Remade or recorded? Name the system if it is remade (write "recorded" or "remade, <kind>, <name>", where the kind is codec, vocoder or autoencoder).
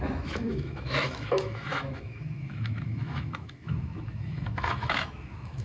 remade, autoencoder, DAC-VAE